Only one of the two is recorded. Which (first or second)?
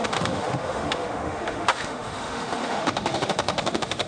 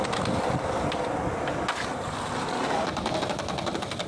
second